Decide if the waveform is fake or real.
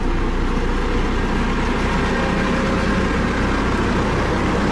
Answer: real